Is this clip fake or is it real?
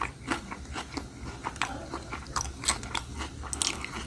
real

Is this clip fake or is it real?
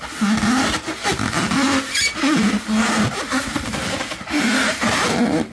real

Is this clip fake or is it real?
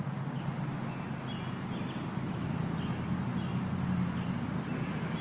real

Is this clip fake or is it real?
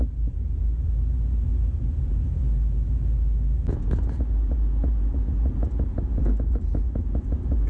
real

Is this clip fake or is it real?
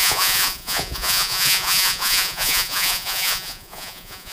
fake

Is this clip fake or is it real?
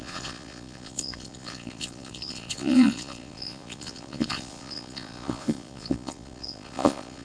fake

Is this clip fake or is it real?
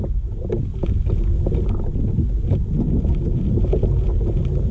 real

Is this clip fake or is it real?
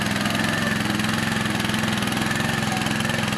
real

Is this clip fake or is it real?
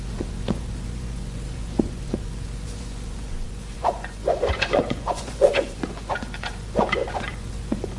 fake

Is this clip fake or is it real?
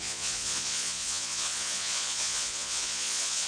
fake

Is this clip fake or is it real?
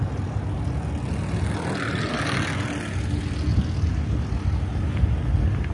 real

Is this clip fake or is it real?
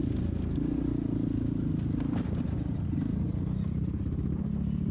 real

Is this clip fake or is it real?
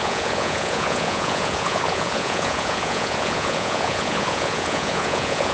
fake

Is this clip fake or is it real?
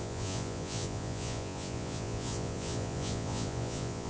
fake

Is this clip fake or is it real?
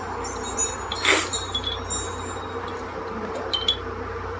real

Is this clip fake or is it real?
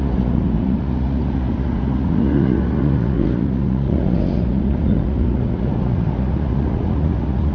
fake